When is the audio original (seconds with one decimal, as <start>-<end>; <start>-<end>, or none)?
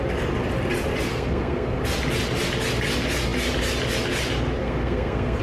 0.0-1.1; 1.8-4.6